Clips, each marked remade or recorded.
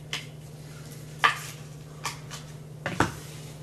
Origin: recorded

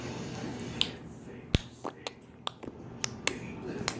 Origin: recorded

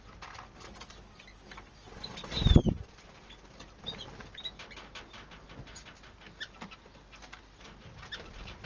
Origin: recorded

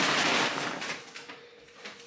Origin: recorded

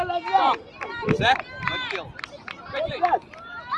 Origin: recorded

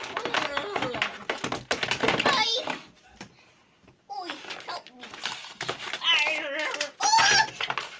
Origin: recorded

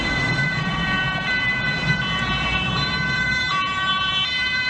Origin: remade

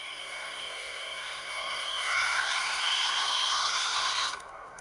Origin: remade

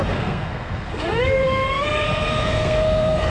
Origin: remade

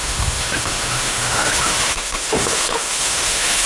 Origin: remade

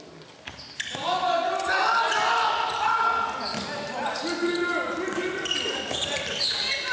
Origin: recorded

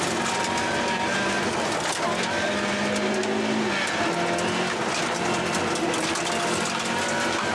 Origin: recorded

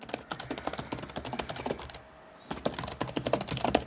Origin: recorded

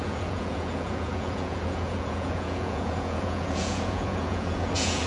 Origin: remade